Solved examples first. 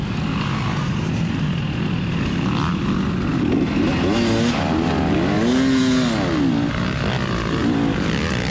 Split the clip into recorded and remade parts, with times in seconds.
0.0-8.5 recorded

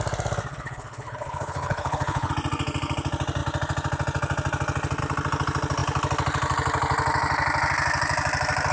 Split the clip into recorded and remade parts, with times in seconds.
0.0-0.5 recorded; 0.5-2.3 remade; 2.3-8.7 recorded